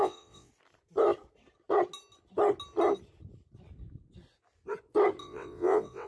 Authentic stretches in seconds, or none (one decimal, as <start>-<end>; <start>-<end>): 0.5-5.2